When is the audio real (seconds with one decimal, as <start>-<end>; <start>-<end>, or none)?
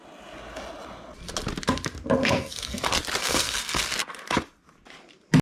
0.0-2.2; 2.8-3.2; 3.8-5.4